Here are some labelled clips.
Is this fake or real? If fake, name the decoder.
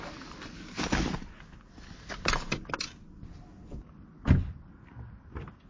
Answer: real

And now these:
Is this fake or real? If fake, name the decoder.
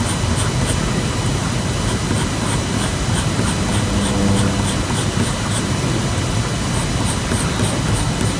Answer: real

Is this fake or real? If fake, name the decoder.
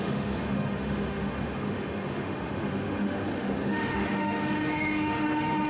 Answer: fake, autoencoder, DAC-VAE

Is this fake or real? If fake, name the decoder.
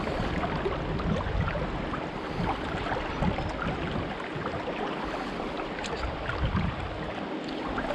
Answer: real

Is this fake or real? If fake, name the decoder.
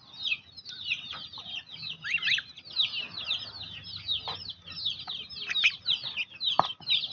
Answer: real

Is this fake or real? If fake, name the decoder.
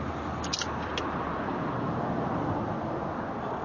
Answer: real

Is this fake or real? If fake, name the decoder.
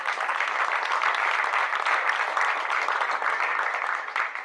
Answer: real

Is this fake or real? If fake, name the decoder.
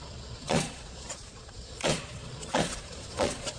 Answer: fake, vocoder, Vocos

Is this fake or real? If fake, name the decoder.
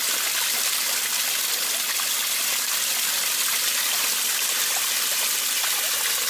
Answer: real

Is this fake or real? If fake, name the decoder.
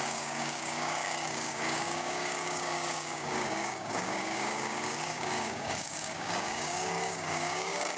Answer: fake, codec, DAC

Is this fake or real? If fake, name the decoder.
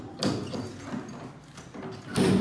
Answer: real